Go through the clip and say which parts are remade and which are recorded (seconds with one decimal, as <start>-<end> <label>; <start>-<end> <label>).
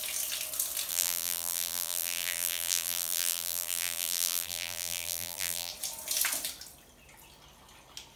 0.0-0.9 recorded; 0.9-5.7 remade; 5.7-8.2 recorded